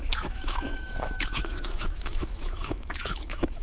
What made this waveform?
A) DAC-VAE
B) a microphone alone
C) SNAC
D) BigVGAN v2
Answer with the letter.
A